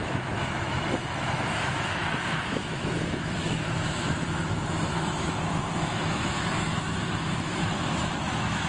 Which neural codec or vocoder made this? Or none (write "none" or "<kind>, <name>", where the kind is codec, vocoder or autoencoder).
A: autoencoder, DAC-VAE